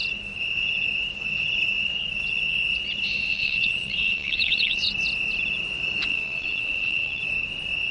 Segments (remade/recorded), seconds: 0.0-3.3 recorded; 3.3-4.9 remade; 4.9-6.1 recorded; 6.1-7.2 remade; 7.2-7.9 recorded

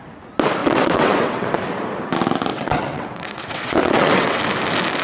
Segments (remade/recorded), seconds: 0.0-0.6 recorded; 0.6-1.5 remade; 1.5-2.5 recorded; 2.5-4.4 remade; 4.4-5.0 recorded